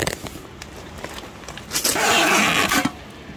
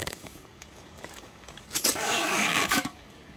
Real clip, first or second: first